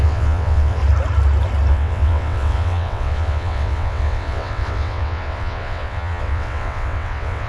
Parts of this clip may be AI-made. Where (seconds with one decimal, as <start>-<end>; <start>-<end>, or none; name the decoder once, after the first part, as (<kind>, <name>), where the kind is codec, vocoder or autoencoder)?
0.0-0.8 (vocoder, WaveNeXt); 1.7-7.5